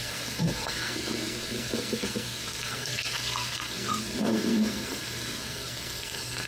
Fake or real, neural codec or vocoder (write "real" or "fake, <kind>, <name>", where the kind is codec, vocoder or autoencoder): fake, codec, SNAC